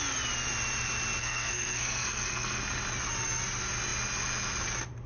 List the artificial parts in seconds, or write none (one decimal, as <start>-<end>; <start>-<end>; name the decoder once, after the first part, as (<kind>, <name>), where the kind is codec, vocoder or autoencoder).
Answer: 1.2-2.6 (codec, SNAC)